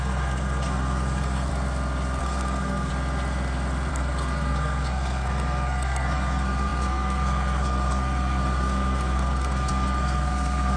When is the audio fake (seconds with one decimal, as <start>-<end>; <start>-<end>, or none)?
0.0-1.5; 2.2-2.9; 3.9-10.8